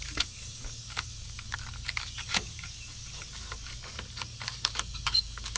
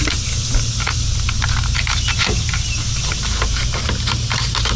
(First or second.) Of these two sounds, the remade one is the first